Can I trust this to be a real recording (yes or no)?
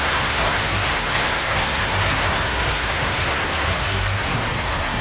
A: no